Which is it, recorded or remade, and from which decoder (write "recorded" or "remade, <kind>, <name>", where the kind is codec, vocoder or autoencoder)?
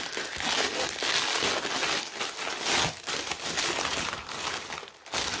recorded